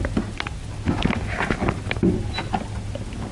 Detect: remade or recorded recorded